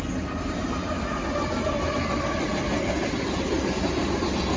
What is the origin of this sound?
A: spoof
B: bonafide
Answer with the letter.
B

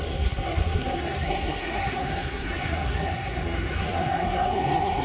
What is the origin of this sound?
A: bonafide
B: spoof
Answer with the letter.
B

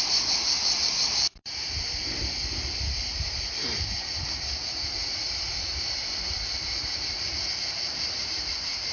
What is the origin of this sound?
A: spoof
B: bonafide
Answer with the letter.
A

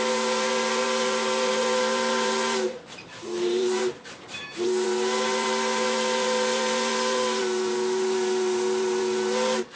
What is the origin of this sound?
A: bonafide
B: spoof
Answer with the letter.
B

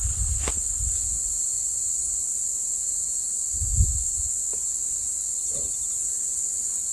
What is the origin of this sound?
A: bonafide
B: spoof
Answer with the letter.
A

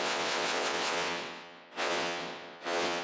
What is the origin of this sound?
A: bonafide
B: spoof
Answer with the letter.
B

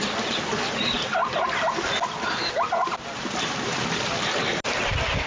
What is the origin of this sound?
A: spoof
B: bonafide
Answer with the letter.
B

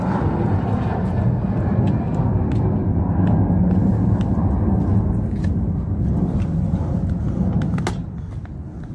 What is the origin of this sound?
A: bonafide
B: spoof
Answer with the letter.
A